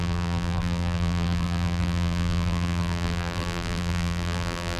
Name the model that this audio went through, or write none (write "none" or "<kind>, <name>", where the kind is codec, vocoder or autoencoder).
vocoder, BigVGAN v2